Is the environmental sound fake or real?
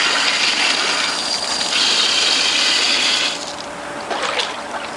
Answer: real